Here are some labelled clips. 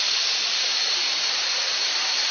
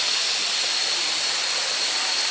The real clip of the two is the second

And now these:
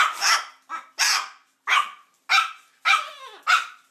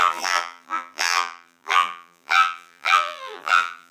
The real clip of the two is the first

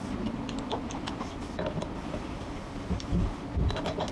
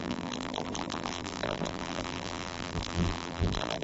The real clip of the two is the first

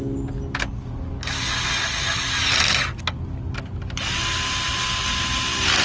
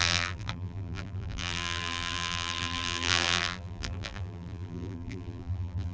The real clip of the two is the first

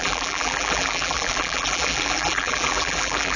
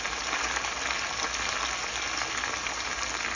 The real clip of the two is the second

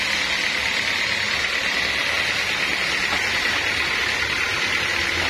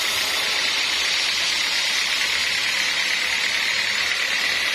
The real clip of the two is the first